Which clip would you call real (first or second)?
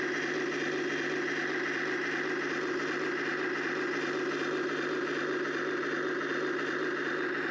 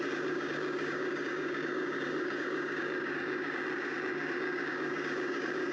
first